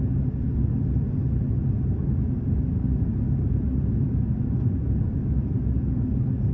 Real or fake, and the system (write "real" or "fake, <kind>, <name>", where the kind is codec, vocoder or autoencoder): real